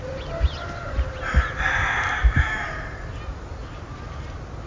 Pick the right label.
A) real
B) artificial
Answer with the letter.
A